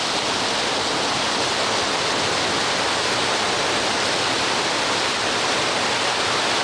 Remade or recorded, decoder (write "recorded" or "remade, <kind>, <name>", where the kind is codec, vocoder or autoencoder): recorded